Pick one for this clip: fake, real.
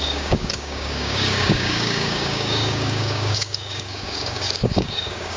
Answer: fake